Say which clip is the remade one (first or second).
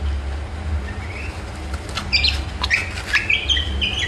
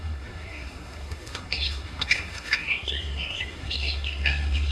second